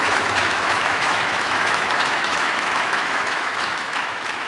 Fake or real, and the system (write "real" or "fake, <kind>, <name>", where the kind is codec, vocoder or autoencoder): fake, autoencoder, DAC-VAE